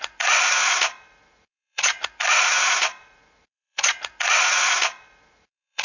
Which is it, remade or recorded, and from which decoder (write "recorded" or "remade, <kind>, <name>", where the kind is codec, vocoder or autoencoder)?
remade, vocoder, Vocos